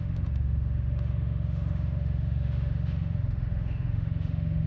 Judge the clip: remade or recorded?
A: remade